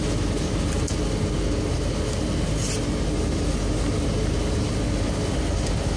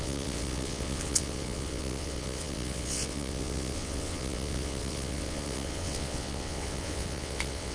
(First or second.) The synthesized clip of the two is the second